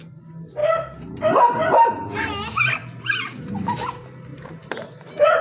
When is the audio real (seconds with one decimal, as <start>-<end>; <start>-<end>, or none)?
0.0-2.8; 3.4-4.3